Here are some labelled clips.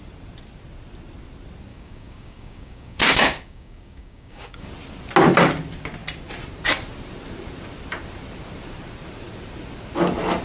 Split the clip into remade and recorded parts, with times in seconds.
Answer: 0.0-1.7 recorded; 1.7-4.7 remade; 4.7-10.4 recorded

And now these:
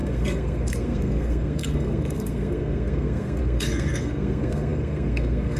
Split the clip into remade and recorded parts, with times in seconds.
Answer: 0.0-5.6 remade

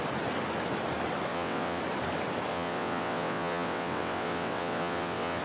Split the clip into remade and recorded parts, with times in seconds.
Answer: 0.0-1.3 recorded; 1.3-1.8 remade; 1.8-2.5 recorded; 2.5-5.4 remade

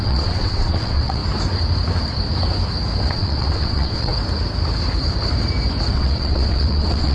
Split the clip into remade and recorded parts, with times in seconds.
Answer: 0.0-1.2 remade; 1.2-3.0 recorded; 3.0-4.1 remade; 4.1-5.9 recorded; 5.9-7.1 remade

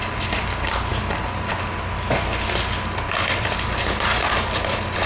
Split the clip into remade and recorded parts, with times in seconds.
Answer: 0.0-5.1 recorded

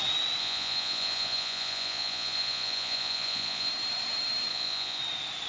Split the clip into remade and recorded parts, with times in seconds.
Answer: 0.0-0.4 recorded; 0.4-3.7 remade; 3.7-4.5 recorded; 4.5-5.0 remade; 5.0-5.5 recorded

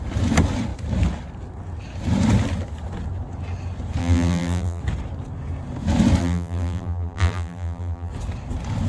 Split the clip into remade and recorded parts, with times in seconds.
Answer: 0.0-4.0 recorded; 4.0-4.8 remade; 4.8-6.2 recorded; 6.2-8.1 remade; 8.1-8.9 recorded

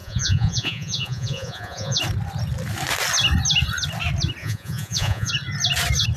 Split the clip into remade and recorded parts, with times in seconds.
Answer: 0.0-2.0 remade; 2.0-4.4 recorded; 4.4-5.3 remade; 5.3-6.2 recorded